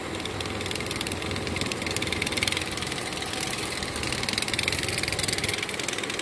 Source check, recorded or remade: recorded